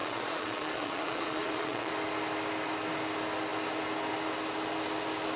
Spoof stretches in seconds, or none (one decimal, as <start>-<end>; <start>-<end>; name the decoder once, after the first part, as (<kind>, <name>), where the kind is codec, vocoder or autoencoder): 0.0-1.9 (vocoder, Vocos)